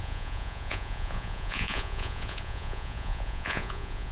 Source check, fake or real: fake